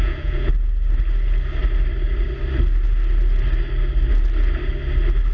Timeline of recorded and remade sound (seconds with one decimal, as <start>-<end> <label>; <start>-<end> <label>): 0.0-0.5 remade; 0.5-5.3 recorded